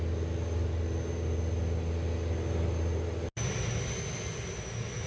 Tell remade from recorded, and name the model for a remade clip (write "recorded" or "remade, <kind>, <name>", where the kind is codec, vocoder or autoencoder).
recorded